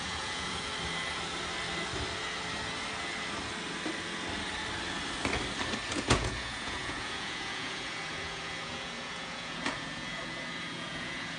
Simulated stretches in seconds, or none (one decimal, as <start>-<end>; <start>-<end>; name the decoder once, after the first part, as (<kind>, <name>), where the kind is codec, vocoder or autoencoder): 0.0-0.7 (vocoder, Vocos); 5.9-11.4